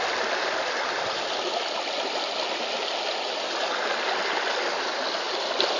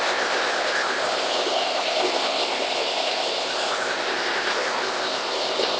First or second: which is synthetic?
second